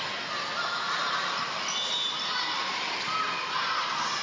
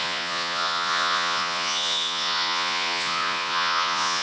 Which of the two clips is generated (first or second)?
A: second